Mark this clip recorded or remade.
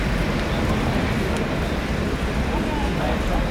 recorded